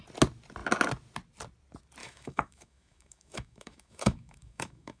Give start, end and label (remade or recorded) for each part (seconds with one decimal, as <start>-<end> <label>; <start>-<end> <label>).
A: 0.0-2.0 recorded; 2.0-5.0 remade